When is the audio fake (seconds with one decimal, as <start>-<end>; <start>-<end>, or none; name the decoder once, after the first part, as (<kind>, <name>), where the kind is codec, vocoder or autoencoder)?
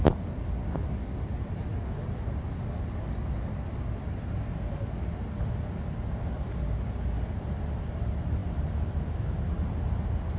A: none